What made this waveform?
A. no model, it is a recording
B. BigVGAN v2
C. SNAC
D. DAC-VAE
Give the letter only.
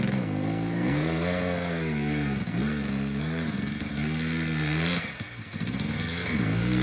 C